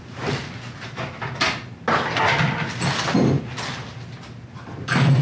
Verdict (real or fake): real